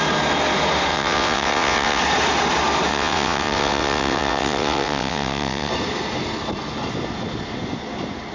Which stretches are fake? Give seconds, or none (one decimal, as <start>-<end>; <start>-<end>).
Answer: 0.9-2.0; 2.9-5.7